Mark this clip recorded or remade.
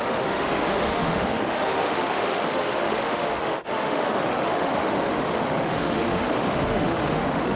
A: remade